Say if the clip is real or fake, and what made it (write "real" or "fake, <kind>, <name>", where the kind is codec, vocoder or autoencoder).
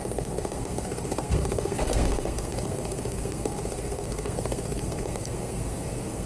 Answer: fake, codec, SNAC